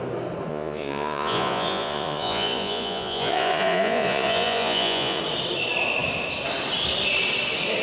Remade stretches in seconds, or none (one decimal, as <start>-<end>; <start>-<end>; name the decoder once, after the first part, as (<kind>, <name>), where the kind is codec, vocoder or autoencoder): 0.5-5.2 (vocoder, Vocos)